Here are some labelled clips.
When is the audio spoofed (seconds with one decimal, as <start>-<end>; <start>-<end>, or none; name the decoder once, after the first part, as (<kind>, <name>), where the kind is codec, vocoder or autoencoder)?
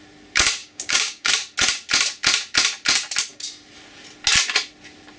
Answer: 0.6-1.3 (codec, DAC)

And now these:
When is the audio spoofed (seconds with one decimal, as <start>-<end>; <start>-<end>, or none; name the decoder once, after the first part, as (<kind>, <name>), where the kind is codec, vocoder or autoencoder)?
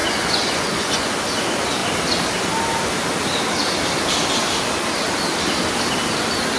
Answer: 0.0-1.1 (vocoder, Vocos)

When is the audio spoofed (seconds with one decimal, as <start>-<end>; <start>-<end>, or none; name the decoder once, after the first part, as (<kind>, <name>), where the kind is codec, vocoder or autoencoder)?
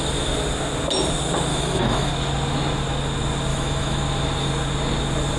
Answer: 1.5-2.1 (autoencoder, DAC-VAE); 3.5-4.0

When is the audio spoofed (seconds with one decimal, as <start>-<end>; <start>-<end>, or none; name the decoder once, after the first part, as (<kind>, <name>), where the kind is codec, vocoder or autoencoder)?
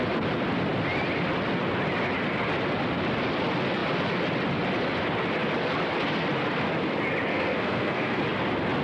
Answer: 7.3-8.2 (codec, SNAC)